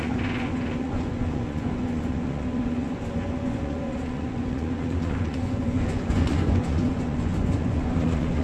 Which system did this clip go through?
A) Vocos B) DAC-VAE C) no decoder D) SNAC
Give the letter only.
A